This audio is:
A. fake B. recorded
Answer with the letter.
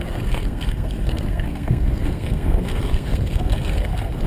A